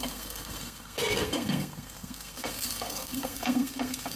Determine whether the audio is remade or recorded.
remade